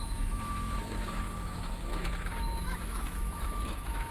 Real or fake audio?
fake